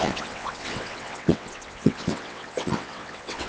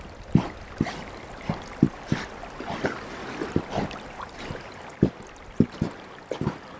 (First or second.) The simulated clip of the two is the first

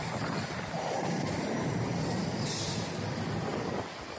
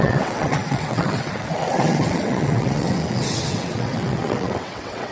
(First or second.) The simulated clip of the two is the second